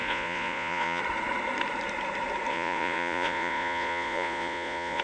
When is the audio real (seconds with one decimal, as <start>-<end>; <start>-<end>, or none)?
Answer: 1.0-2.5